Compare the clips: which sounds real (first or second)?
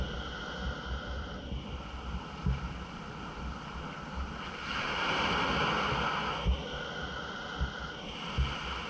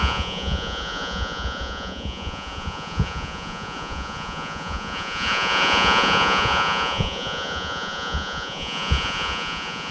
first